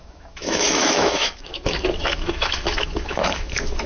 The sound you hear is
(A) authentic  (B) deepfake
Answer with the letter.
B